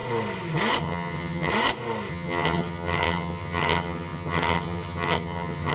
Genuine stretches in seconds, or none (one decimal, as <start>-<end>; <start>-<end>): 0.0-0.8; 1.5-2.1